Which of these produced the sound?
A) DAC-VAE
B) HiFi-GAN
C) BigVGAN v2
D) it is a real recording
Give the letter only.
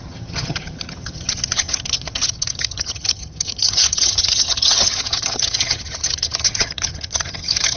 B